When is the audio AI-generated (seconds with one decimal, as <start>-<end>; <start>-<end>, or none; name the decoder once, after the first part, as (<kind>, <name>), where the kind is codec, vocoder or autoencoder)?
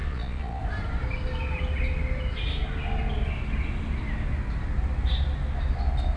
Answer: 0.0-0.6 (vocoder, Vocos)